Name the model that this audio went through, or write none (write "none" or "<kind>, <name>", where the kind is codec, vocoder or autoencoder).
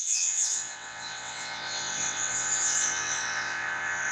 vocoder, WaveNeXt